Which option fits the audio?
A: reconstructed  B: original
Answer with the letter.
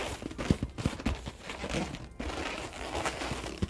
B